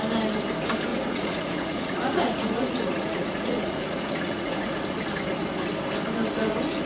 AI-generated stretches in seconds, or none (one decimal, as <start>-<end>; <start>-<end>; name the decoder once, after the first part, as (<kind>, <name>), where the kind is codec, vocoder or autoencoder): 0.9-5.0 (vocoder, Vocos)